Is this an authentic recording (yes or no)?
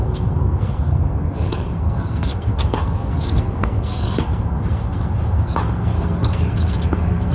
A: no